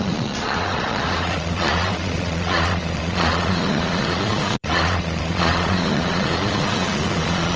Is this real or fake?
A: fake